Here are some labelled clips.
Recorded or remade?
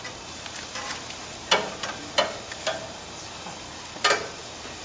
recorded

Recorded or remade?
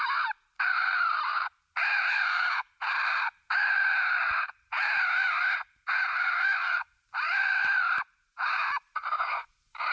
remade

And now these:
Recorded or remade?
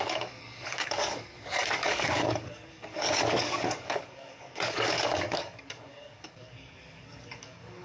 remade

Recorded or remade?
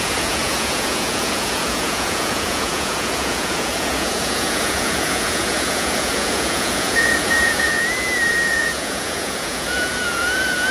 remade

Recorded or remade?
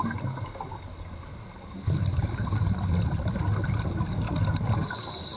recorded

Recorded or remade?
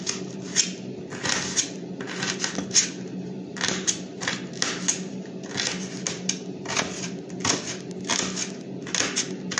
recorded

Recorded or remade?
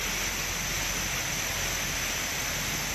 recorded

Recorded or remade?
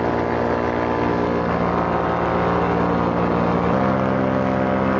recorded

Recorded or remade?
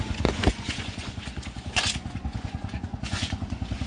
remade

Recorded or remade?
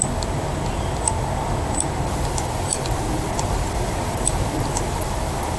recorded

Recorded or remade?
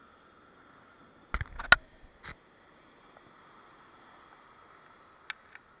recorded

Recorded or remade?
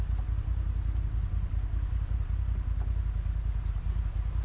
recorded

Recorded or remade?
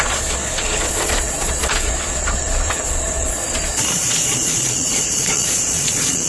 remade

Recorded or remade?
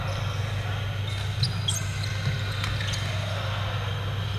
recorded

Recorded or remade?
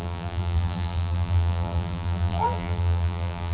remade